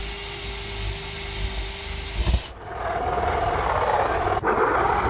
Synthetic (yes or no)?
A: no